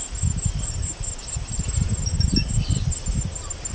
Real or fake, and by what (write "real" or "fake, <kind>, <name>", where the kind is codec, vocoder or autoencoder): real